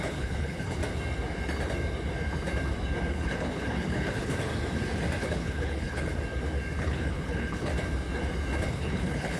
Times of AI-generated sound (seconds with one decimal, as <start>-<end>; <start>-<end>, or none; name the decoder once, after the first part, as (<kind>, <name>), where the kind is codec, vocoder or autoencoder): 0.0-0.8 (codec, HILCodec); 3.1-4.5; 5.2-6.1; 6.8-7.7; 8.7-9.4